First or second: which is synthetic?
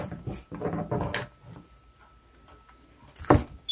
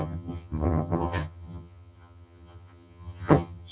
second